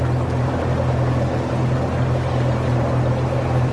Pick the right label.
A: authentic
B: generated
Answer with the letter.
A